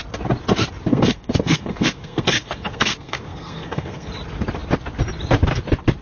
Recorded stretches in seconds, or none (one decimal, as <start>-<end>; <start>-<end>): 0.0-0.9; 4.1-6.0